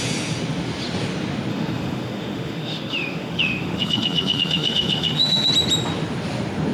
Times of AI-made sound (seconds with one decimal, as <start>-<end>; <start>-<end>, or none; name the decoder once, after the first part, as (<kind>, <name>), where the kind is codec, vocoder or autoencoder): 1.5-5.5 (autoencoder, DAC-VAE)